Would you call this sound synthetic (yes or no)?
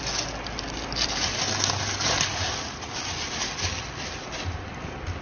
no